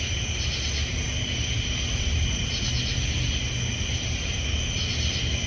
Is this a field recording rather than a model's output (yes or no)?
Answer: yes